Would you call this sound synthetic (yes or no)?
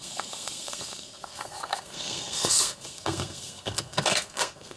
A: yes